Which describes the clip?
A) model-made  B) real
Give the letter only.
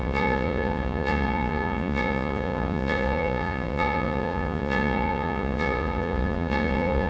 A